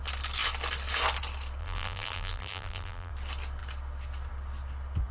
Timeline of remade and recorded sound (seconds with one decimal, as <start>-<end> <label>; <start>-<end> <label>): 0.0-1.6 recorded; 1.6-3.1 remade; 3.1-5.1 recorded